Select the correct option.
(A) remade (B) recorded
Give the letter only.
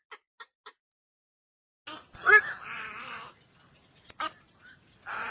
B